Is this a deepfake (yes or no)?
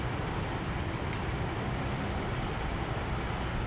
no